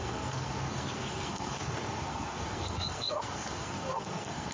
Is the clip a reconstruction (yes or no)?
yes